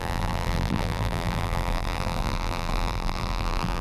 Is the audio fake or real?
fake